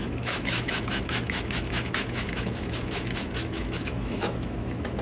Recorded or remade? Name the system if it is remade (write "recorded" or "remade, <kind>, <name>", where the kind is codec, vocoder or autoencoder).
remade, autoencoder, DAC-VAE